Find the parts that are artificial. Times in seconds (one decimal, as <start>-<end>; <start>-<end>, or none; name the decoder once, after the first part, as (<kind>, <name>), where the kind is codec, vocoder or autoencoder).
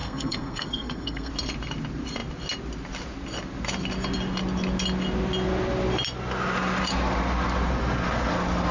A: 0.0-1.3 (codec, SNAC)